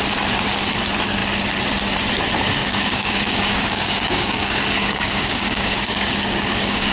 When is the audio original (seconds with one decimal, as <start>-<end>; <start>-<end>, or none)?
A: 0.0-2.6